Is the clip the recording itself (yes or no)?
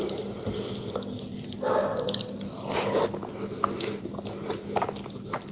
yes